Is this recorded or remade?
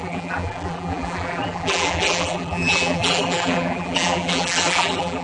remade